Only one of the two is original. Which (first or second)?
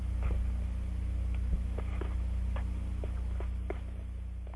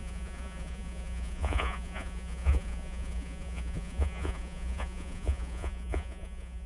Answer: first